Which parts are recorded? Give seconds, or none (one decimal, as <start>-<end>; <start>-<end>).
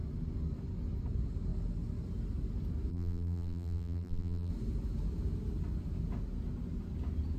0.0-2.9; 4.5-7.4